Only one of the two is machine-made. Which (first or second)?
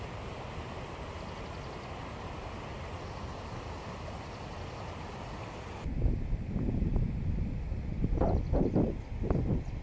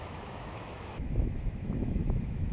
second